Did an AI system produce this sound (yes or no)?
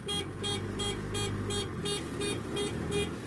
no